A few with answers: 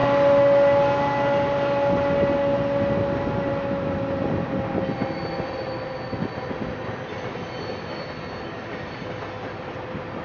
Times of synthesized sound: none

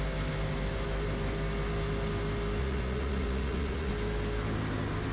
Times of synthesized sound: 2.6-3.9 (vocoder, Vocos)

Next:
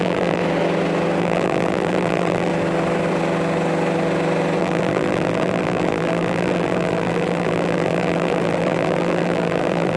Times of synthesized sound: 0.0-0.4 (vocoder, BigVGAN v2); 1.2-2.5; 4.6-10.0

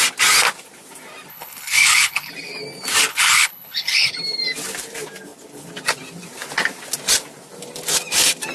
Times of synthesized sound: 1.3-2.3 (codec, HILCodec); 3.1-4.1

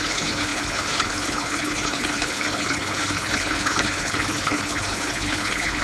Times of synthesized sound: 0.0-5.8 (codec, HILCodec)